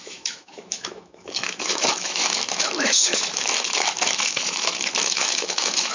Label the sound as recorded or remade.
remade